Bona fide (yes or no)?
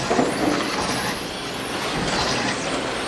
yes